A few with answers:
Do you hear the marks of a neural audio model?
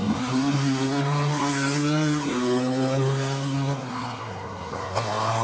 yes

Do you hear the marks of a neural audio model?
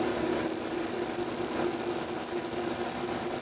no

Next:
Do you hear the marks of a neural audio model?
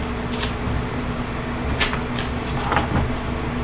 no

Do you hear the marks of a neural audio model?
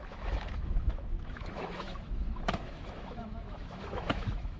yes